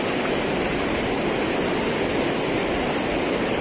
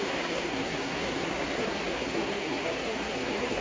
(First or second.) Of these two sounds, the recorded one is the first